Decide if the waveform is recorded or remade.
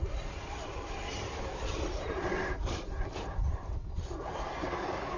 remade